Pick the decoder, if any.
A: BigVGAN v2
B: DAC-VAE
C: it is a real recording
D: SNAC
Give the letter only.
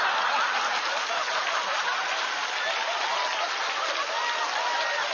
C